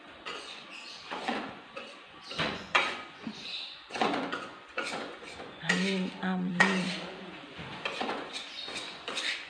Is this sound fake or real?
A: fake